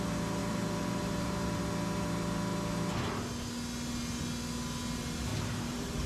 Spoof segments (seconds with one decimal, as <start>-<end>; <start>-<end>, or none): 0.4-1.6; 5.3-6.1